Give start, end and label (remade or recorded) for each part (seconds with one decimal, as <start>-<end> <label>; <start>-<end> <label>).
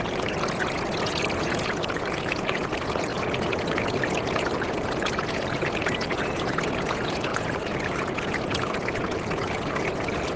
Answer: 0.0-10.4 remade